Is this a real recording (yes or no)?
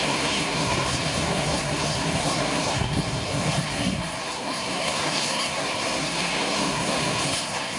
no